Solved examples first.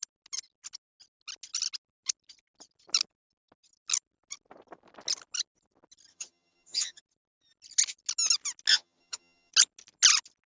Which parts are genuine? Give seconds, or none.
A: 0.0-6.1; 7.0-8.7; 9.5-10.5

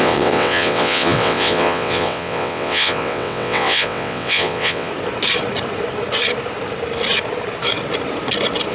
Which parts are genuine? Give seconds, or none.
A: 4.9-8.7

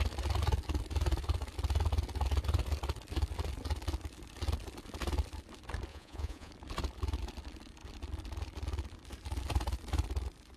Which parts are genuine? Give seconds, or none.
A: 0.0-5.9; 6.5-10.6

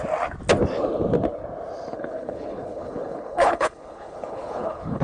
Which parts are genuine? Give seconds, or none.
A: 0.0-1.9

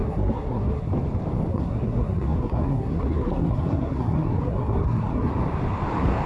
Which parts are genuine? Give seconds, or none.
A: 0.9-1.5; 5.3-6.3

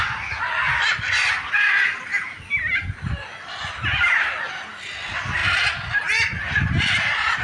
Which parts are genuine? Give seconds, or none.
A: 0.0-7.4

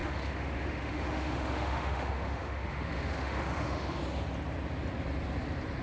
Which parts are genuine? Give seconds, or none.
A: 4.0-5.8

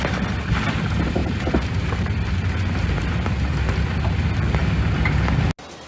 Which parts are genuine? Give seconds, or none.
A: 0.0-5.9